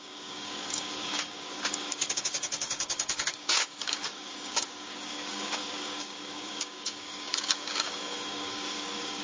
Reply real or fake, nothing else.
fake